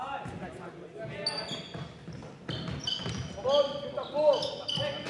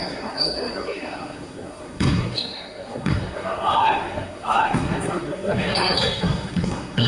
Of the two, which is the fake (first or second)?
second